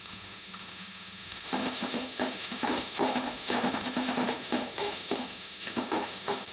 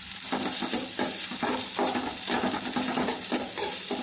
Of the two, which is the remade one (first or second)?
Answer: first